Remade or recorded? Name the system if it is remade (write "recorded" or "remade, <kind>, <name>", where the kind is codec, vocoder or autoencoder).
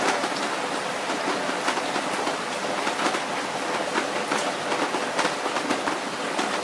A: recorded